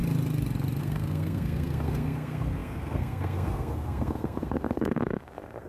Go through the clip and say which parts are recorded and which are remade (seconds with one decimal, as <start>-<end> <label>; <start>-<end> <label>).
0.0-0.8 recorded; 0.8-5.7 remade